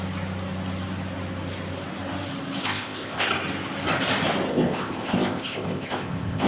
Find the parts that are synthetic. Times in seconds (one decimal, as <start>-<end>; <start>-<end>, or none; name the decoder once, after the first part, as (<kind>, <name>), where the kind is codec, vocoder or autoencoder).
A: 2.6-3.3 (codec, ZipCodec); 4.5-6.5